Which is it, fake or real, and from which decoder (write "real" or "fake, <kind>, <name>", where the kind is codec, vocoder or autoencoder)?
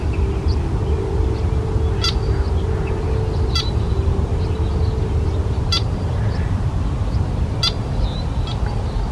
real